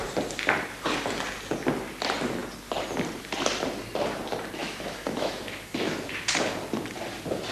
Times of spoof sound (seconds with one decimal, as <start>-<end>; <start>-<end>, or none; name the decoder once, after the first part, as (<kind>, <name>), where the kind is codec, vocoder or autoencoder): 4.6-5.9 (autoencoder, DAC-VAE)